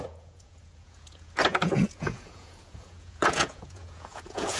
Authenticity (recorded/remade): remade